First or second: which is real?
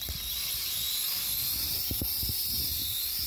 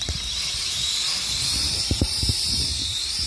first